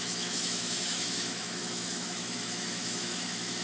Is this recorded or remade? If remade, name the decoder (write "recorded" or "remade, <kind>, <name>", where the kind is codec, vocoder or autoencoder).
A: remade, autoencoder, DAC-VAE